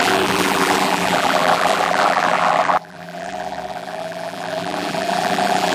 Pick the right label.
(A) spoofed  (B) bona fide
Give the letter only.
A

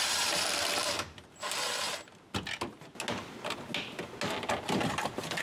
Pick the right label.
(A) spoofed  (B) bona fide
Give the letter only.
B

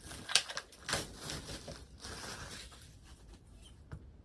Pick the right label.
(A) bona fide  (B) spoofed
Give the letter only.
A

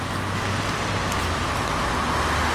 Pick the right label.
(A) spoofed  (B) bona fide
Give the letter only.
B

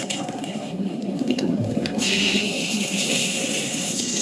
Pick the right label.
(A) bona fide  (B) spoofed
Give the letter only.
B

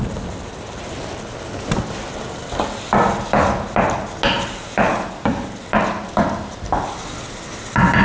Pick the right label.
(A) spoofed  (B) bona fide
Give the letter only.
B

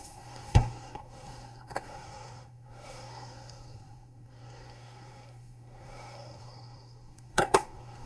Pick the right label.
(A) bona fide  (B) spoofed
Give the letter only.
B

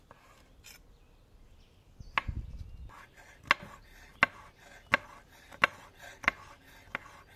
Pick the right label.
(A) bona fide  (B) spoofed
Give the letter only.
A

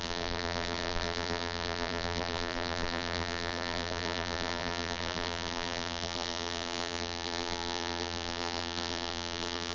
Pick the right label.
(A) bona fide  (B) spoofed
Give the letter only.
B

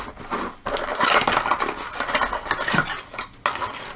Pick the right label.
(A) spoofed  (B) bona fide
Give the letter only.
B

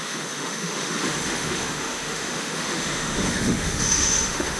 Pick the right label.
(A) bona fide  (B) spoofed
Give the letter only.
B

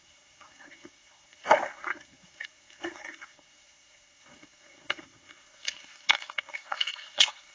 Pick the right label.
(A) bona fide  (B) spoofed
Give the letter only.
B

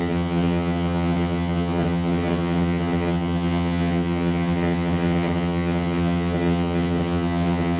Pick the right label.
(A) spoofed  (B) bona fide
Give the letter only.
A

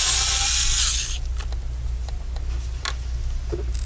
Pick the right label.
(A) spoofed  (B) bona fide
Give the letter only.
B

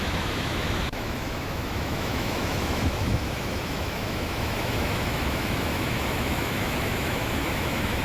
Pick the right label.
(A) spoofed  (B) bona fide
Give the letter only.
A